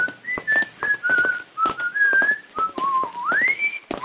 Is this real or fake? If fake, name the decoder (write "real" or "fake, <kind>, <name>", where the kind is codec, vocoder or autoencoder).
real